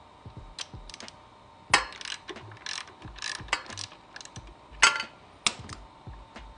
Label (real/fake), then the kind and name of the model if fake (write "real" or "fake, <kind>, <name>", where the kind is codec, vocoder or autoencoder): real